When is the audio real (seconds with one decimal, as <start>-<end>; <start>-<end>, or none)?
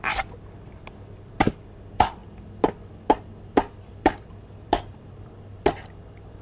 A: 0.0-6.4